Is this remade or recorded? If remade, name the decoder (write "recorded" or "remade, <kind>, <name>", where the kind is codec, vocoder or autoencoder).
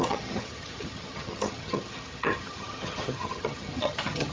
remade, vocoder, HiFi-GAN